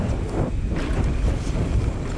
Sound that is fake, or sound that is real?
real